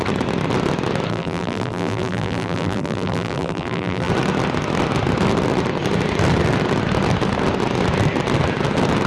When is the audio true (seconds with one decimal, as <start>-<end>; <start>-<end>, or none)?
0.0-1.1; 4.1-9.1